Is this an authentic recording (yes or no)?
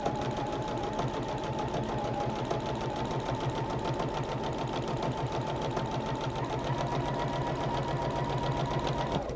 yes